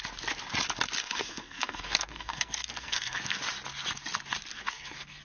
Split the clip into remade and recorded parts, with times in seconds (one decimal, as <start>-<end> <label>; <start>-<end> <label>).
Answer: 0.0-1.0 recorded; 1.0-3.4 remade; 3.4-4.5 recorded; 4.5-5.2 remade